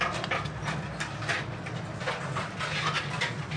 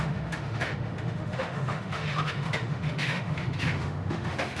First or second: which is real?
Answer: first